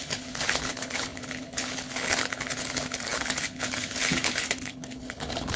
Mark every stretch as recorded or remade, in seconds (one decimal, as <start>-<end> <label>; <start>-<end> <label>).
0.0-5.6 remade